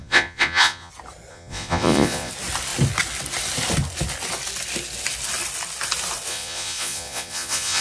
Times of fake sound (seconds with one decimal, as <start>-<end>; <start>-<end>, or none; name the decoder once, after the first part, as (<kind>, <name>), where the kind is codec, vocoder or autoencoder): 0.0-0.9 (vocoder, Vocos); 1.3-2.3; 6.3-7.8